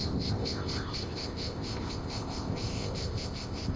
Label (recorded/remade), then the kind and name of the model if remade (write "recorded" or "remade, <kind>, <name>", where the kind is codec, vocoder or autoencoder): remade, codec, ZipCodec